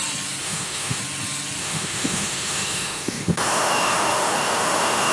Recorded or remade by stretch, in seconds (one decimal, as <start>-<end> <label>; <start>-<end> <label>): 0.0-0.4 recorded; 0.4-1.0 remade; 1.0-1.6 recorded; 1.6-5.1 remade